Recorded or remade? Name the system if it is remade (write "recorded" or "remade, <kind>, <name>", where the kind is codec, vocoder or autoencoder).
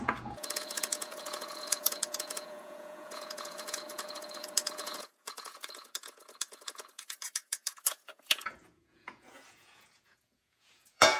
remade, vocoder, Vocos